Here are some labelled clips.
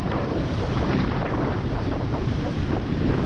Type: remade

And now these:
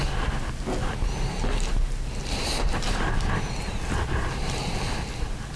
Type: recorded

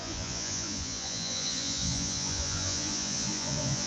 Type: remade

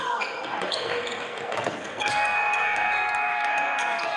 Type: remade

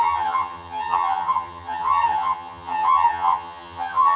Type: remade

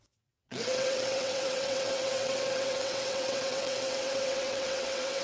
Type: remade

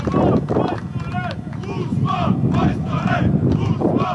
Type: recorded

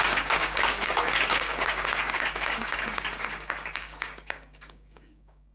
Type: remade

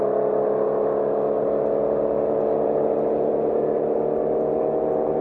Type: recorded